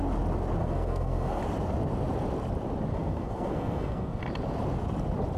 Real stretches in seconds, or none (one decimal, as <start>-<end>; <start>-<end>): 0.0-0.6; 1.4-2.9; 4.2-5.4